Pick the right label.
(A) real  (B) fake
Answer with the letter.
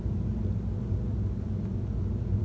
A